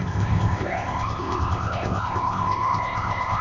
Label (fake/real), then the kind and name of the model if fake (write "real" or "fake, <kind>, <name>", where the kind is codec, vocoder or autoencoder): fake, codec, ZipCodec